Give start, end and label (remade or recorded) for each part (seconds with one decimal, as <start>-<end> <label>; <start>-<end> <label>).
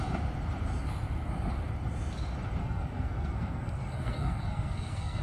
0.0-2.6 recorded; 2.6-5.2 remade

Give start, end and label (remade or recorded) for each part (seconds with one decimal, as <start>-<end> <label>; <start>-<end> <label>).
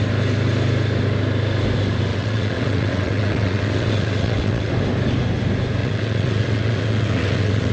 0.0-2.1 recorded; 2.1-4.7 remade; 4.7-5.8 recorded; 5.8-7.7 remade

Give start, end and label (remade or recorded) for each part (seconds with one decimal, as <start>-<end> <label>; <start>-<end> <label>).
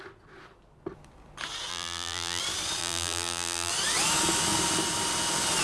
0.0-1.7 recorded; 1.7-2.4 remade; 2.4-2.8 recorded; 2.8-3.7 remade; 3.7-5.6 recorded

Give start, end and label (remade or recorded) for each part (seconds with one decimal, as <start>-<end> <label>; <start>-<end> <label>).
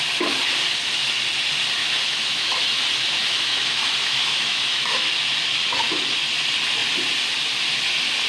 0.0-1.8 recorded; 1.8-2.8 remade; 2.8-3.2 recorded; 3.2-5.1 remade; 5.1-8.3 recorded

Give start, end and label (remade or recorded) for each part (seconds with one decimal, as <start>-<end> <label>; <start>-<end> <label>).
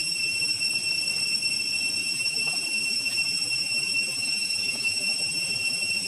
0.0-0.6 remade; 0.6-2.0 recorded; 2.0-6.1 remade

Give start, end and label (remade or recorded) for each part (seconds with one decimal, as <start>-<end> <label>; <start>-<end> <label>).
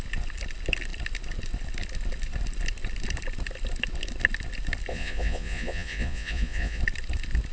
0.0-4.9 recorded; 4.9-6.8 remade; 6.8-7.5 recorded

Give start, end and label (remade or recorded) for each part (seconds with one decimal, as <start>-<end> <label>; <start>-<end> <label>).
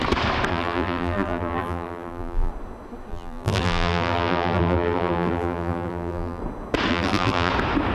0.0-0.5 recorded; 0.5-2.5 remade; 2.5-3.1 recorded; 3.1-6.4 remade; 6.4-6.9 recorded; 6.9-7.5 remade; 7.5-7.9 recorded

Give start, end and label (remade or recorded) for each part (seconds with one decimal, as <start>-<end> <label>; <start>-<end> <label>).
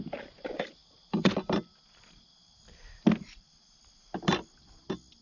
0.0-5.2 recorded